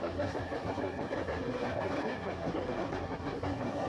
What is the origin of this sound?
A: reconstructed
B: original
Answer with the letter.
A